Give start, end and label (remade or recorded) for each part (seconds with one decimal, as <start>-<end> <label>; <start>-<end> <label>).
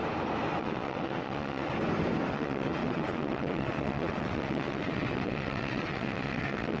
0.0-0.6 recorded; 0.6-1.7 remade; 1.7-2.3 recorded; 2.3-6.8 remade